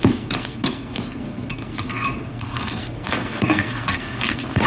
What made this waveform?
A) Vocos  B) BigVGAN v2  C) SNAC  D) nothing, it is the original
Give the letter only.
C